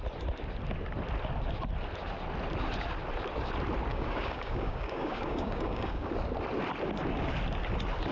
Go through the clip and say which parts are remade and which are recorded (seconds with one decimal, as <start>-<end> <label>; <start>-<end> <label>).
0.0-3.9 recorded; 3.9-6.1 remade; 6.1-8.1 recorded